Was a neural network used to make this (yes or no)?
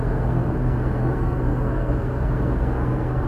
yes